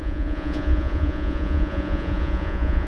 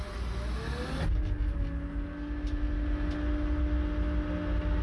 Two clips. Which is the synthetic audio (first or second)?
first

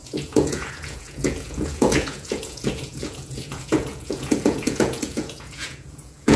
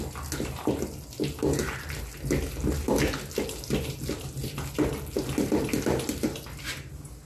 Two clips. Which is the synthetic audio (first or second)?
first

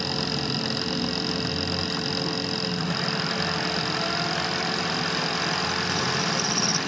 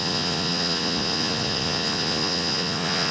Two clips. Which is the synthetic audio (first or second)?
second